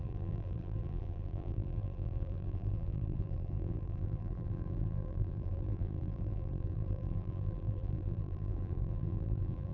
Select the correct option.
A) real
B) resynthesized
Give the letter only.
B